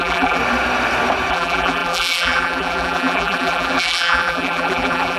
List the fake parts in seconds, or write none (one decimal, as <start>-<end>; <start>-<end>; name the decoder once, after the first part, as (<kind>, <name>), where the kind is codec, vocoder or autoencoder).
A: 0.0-0.4 (vocoder, BigVGAN v2); 1.3-5.2

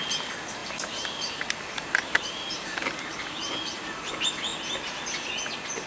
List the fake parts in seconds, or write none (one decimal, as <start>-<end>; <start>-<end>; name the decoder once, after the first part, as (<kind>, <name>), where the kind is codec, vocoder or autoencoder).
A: 0.6-4.1 (vocoder, BigVGAN v2)

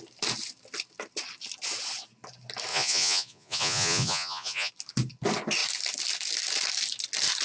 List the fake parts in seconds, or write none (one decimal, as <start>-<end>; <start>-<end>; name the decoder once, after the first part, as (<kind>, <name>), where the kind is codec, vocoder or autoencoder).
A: 2.7-4.7 (vocoder, Vocos)

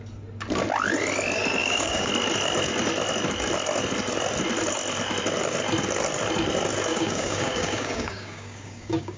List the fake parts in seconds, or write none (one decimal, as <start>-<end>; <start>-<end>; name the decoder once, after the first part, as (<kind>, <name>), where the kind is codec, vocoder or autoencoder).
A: 1.6-2.1 (codec, DAC); 6.9-9.2

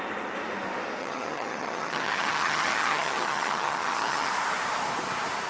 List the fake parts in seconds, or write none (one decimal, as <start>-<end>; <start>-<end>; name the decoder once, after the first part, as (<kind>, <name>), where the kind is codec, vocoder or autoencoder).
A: 1.0-4.3 (vocoder, HiFi-GAN)